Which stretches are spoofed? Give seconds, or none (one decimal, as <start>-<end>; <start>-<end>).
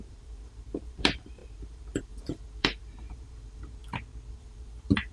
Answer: 0.0-3.8; 4.3-5.1